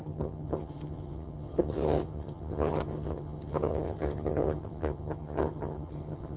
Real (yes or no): no